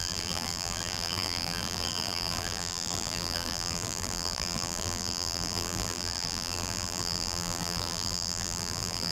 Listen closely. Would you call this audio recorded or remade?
remade